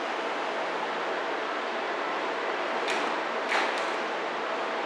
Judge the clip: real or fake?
real